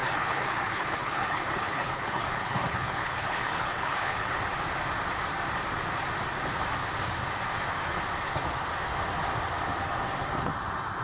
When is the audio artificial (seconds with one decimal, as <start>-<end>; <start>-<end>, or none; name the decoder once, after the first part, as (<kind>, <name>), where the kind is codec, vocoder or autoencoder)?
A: 0.0-4.4 (codec, HILCodec)